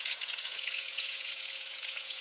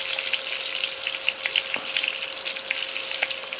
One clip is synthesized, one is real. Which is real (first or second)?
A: second